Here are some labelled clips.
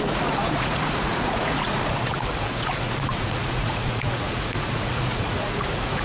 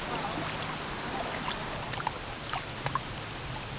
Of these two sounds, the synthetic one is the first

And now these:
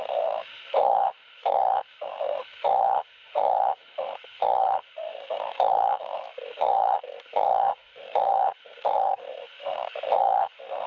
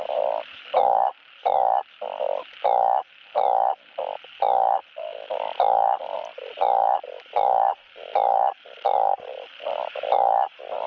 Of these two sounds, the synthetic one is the first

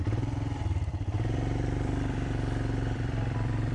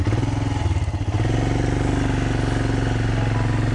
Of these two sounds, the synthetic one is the first